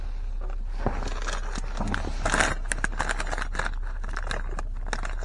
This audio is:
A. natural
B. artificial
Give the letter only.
A